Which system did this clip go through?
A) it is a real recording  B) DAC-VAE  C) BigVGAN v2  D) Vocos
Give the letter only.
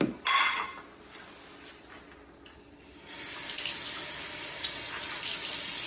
A